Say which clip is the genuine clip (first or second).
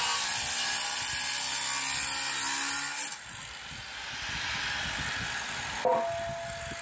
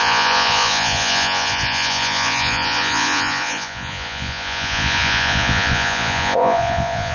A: first